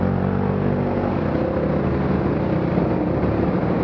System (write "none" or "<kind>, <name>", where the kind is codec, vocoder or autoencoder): none